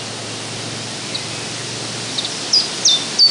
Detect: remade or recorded recorded